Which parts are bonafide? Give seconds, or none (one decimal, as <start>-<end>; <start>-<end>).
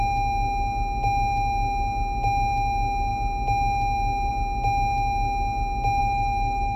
0.0-6.0